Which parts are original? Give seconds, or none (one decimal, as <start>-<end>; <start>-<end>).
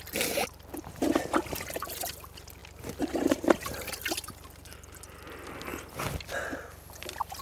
0.0-7.4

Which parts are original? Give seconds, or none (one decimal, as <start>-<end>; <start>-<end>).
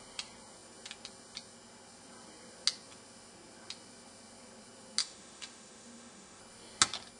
0.0-5.0; 6.4-7.2